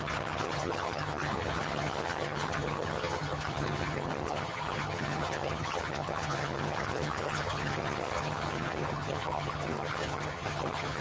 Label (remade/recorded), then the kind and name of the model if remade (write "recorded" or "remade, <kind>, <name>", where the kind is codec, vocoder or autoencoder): remade, vocoder, HiFi-GAN